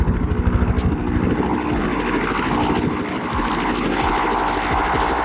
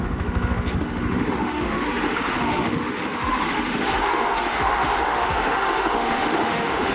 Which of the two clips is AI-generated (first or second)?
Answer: second